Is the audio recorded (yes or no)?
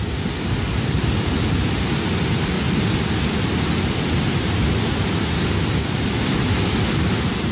yes